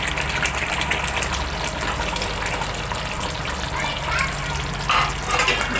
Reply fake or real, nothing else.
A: real